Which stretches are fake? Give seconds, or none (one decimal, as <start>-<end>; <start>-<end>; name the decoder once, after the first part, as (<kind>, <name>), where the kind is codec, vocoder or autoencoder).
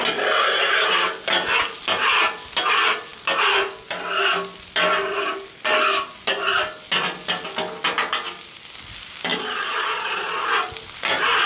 9.3-10.4 (vocoder, Vocos)